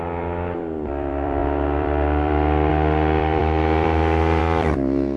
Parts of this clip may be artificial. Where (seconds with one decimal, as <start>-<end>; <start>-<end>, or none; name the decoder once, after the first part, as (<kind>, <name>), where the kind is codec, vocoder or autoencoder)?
0.0-5.2 (vocoder, BigVGAN v2)